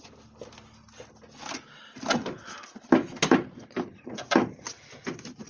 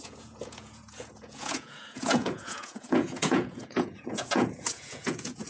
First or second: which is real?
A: first